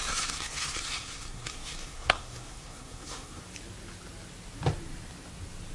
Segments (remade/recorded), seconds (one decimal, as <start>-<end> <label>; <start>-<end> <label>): 0.0-3.4 remade; 3.4-5.7 recorded